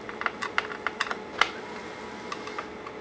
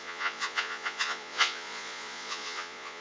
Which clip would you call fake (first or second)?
second